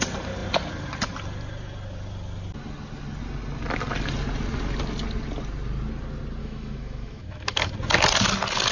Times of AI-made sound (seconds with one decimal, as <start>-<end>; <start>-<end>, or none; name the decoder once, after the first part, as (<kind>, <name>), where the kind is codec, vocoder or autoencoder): 6.4-7.7 (autoencoder, DAC-VAE)